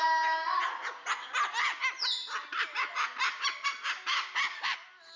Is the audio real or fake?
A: real